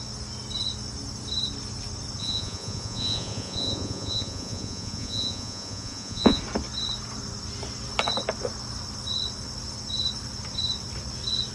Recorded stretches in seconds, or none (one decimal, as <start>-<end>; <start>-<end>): 0.0-2.2; 6.4-11.5